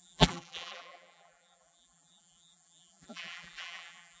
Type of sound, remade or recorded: remade